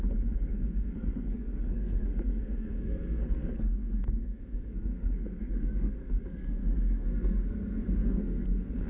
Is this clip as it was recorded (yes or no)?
no